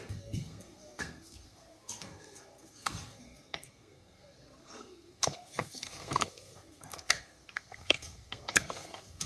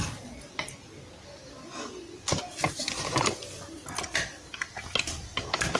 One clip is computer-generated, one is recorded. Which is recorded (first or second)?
second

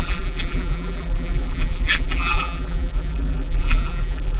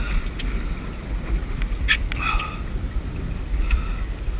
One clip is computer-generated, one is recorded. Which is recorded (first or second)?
second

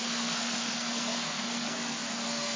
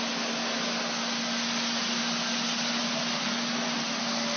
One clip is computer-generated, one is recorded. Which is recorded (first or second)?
second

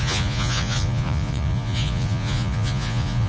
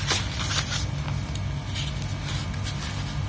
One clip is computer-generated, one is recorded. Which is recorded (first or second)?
second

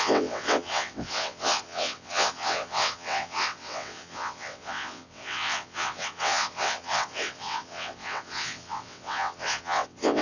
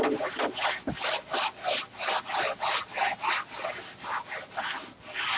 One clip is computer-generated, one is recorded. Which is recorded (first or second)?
second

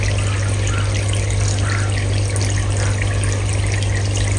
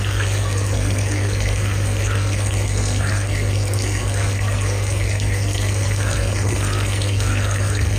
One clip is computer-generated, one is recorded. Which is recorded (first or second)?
first